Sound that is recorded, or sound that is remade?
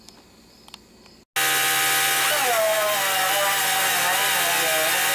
recorded